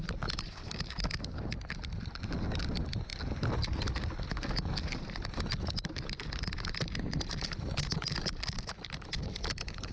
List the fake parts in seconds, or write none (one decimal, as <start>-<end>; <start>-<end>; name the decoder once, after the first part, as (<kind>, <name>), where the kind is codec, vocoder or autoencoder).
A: none